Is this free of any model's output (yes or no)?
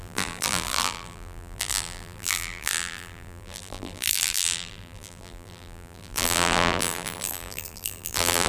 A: no